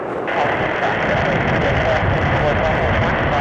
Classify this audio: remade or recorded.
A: recorded